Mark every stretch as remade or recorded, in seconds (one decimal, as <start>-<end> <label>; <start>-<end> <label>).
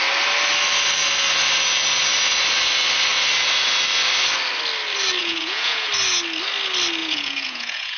0.0-5.2 recorded; 5.2-5.9 remade; 5.9-7.0 recorded; 7.0-8.0 remade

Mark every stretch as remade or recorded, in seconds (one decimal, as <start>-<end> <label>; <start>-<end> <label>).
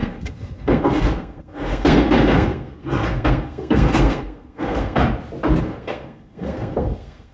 0.0-5.0 remade; 5.0-5.6 recorded; 5.6-7.3 remade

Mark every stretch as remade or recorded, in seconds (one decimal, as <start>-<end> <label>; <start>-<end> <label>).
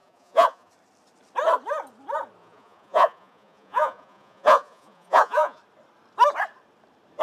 0.0-0.7 remade; 0.7-2.4 recorded; 2.4-5.6 remade; 5.6-7.2 recorded